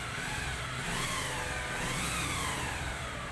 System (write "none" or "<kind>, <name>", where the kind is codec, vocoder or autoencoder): none